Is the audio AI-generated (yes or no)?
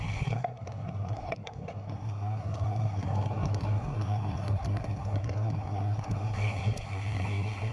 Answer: yes